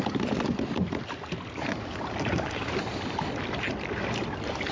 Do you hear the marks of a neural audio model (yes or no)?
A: no